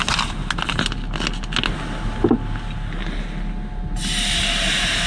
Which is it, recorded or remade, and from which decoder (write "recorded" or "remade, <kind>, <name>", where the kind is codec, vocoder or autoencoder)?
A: recorded